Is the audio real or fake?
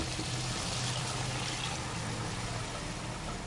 real